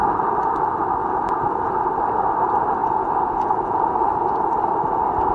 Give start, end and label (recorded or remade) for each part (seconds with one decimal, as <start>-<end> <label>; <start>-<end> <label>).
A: 0.0-1.0 recorded; 1.0-1.8 remade; 1.8-2.8 recorded; 2.8-4.5 remade; 4.5-5.3 recorded